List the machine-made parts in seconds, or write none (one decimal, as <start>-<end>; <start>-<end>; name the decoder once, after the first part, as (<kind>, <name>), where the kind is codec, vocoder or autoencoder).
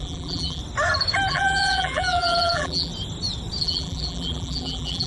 0.0-0.6 (vocoder, BigVGAN v2); 1.3-2.9; 3.6-5.1